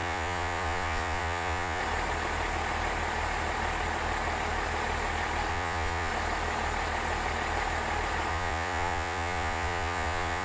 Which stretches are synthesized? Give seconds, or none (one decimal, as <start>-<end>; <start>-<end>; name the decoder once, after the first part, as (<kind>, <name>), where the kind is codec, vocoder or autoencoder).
0.0-1.8 (vocoder, Vocos); 5.5-6.1; 8.3-10.4